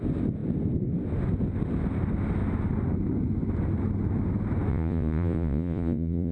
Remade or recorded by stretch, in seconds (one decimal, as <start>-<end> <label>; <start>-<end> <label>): 0.0-4.7 recorded; 4.7-6.3 remade